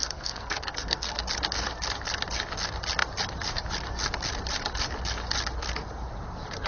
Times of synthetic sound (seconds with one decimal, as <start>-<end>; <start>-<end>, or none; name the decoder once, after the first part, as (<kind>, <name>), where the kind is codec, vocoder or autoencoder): 0.0-1.2 (codec, SNAC)